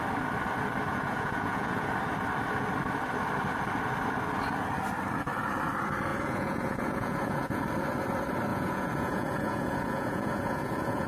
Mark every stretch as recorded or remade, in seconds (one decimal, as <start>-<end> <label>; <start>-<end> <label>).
0.0-0.9 recorded; 0.9-1.9 remade; 1.9-6.1 recorded; 6.1-7.6 remade; 7.6-8.5 recorded; 8.5-11.1 remade